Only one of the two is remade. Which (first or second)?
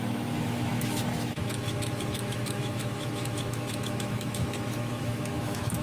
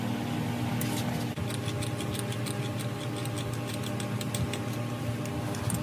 first